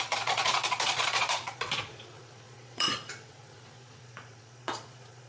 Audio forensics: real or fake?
fake